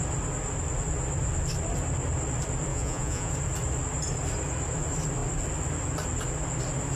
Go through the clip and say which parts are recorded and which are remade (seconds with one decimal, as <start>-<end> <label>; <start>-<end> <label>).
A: 0.0-2.7 recorded; 2.7-3.3 remade; 3.3-7.0 recorded